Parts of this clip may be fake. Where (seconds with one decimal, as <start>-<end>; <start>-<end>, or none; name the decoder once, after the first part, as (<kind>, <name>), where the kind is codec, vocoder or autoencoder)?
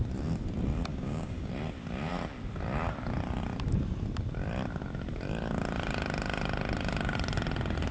0.9-1.5 (codec, DAC)